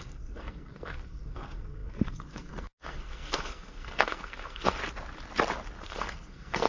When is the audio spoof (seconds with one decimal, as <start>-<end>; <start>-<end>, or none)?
0.0-4.8; 5.8-6.7